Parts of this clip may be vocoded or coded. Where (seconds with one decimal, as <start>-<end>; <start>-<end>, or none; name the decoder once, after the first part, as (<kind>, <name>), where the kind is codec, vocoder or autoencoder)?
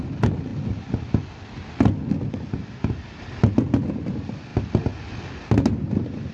none